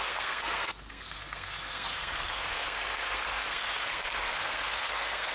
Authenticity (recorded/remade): remade